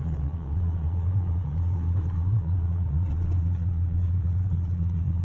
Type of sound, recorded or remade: remade